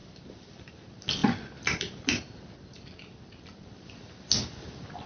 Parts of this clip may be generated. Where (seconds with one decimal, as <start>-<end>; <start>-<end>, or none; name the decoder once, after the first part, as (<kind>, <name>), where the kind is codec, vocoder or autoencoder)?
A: 0.0-0.7 (vocoder, BigVGAN v2); 1.2-4.3